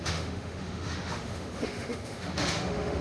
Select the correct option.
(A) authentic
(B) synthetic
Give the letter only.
B